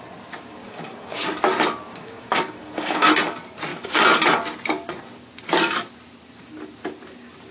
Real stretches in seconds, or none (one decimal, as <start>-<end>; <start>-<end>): 0.0-0.6; 1.3-1.9; 3.1-7.5